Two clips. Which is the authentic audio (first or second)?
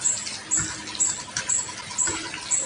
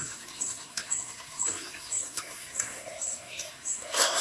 first